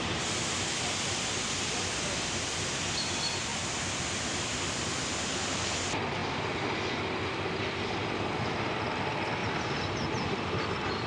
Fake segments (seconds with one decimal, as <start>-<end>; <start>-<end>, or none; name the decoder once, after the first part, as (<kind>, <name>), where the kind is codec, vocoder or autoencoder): 3.5-5.3 (vocoder, BigVGAN v2); 6.2-7.8; 9.4-10.6